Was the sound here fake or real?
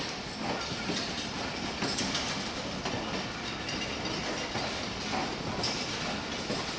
real